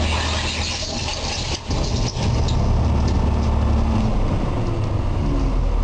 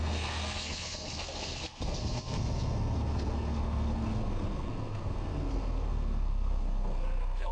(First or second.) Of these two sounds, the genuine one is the first